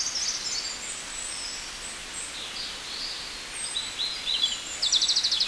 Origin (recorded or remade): recorded